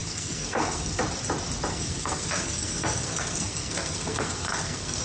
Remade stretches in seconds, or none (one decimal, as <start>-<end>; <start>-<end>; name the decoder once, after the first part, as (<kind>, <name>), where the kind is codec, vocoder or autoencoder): 0.0-1.0 (codec, SNAC); 1.7-5.0